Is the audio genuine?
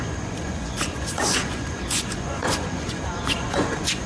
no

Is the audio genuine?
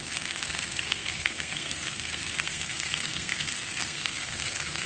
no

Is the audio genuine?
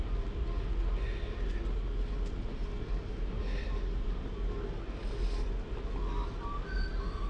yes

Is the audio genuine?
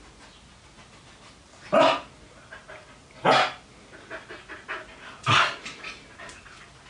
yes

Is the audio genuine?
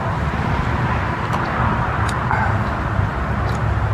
yes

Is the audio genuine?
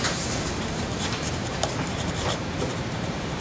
no